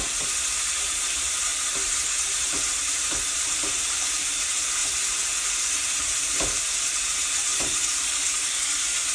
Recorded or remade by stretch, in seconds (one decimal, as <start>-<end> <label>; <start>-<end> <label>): 0.0-9.1 remade